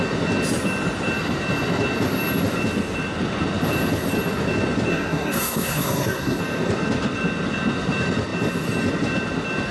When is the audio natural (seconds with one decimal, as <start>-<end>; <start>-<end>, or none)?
0.0-4.9; 6.4-9.7